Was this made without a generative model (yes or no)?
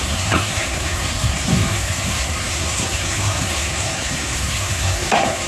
no